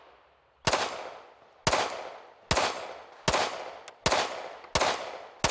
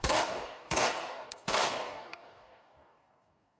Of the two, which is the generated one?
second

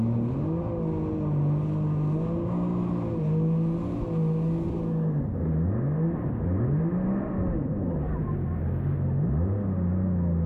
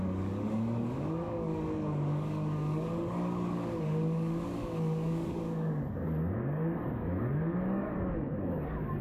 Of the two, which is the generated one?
second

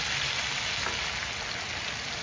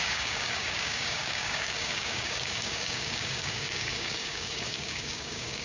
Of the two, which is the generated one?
second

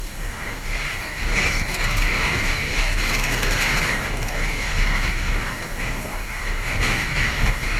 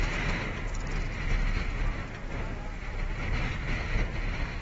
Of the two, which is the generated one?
first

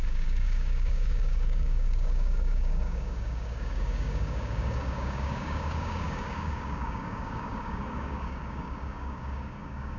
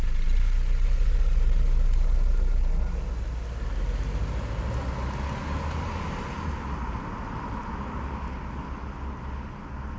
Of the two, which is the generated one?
first